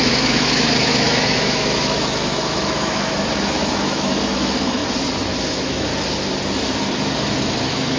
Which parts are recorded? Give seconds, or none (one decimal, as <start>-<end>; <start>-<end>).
4.8-5.4; 5.9-7.6